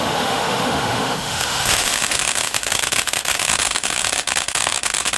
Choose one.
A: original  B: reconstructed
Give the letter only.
B